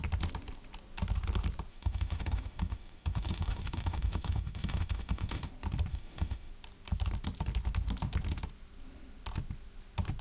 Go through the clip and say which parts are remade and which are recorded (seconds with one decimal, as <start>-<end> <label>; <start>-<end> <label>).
0.0-1.7 recorded; 1.7-5.5 remade; 5.5-5.9 recorded; 5.9-6.5 remade; 6.5-10.2 recorded